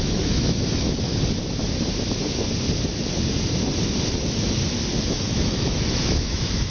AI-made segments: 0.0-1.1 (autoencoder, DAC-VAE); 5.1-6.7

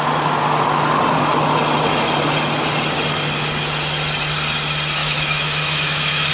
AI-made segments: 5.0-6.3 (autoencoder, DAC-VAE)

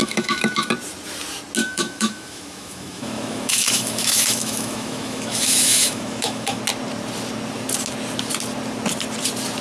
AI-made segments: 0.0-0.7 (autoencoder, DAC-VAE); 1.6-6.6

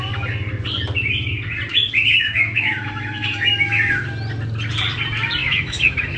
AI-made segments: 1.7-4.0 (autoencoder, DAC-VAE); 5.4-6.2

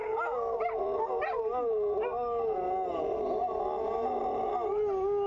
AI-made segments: none

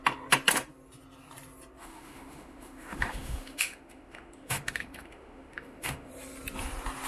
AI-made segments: 1.8-6.1 (autoencoder, DAC-VAE)